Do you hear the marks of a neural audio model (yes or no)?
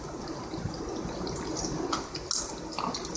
no